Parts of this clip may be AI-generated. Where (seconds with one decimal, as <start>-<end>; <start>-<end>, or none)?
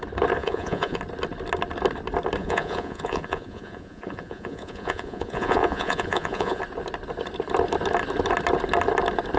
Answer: 0.4-1.0; 2.4-6.6